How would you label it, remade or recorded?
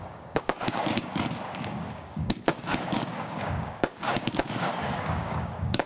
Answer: remade